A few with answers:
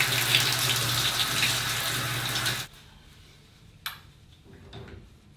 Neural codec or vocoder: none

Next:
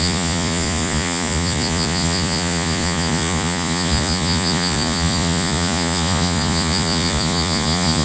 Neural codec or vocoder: vocoder, Vocos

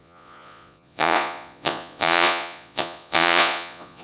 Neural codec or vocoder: vocoder, Vocos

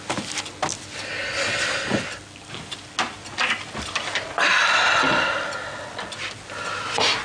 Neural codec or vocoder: none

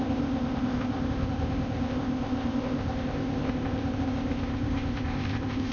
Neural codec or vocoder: codec, ZipCodec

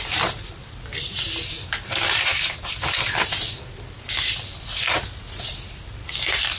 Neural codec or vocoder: vocoder, BigVGAN v2